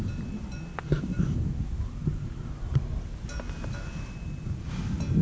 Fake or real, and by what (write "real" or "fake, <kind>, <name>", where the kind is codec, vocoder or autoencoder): real